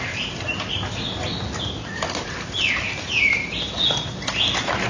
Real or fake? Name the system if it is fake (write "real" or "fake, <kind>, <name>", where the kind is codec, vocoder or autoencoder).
real